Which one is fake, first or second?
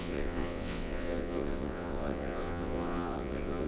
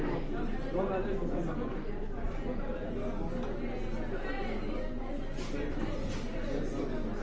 first